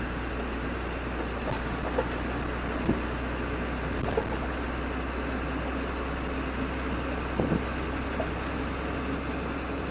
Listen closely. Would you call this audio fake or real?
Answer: real